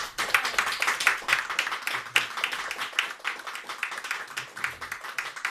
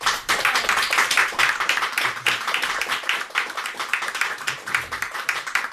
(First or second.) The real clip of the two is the first